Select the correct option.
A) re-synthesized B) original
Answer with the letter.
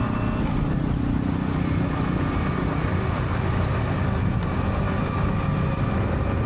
B